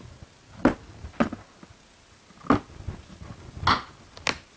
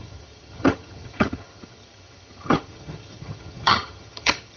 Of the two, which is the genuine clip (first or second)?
first